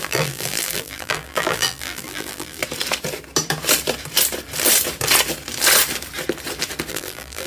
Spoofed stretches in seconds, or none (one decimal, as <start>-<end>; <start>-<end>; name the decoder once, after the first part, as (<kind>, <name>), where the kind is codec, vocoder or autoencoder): 0.0-2.6 (vocoder, BigVGAN v2); 6.9-7.5

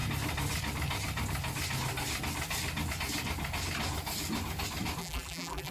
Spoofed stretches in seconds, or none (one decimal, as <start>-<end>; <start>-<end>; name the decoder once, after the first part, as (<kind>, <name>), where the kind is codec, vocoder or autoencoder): 5.0-5.7 (vocoder, BigVGAN v2)

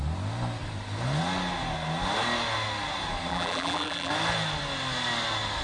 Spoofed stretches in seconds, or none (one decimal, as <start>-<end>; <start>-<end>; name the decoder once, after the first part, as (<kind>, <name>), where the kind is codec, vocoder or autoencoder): 3.3-4.1 (vocoder, BigVGAN v2)

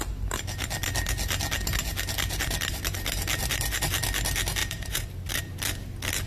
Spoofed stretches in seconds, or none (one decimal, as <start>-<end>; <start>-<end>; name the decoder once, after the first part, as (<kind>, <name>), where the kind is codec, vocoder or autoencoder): 4.6-5.4 (vocoder, BigVGAN v2)

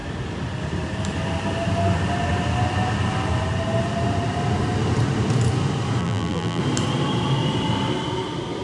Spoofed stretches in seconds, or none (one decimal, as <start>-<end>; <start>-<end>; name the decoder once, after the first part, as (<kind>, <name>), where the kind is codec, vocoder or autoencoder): 6.0-6.6 (vocoder, BigVGAN v2)

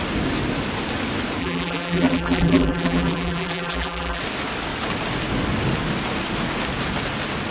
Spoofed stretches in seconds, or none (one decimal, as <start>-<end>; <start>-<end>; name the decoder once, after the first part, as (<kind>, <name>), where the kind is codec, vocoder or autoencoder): 1.4-4.2 (vocoder, BigVGAN v2)

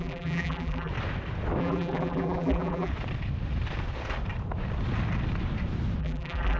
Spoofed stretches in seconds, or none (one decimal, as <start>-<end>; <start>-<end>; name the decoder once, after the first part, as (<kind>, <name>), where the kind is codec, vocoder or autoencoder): 0.0-0.9 (vocoder, BigVGAN v2); 1.6-2.9; 6.0-6.6